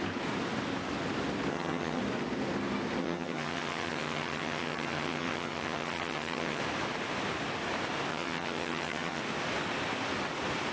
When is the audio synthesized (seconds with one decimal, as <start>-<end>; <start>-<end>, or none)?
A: 1.5-2.0; 3.0-6.6; 8.1-9.2